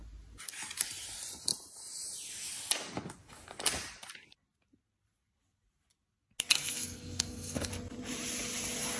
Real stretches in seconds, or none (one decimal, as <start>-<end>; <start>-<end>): 0.0-6.5; 7.7-9.0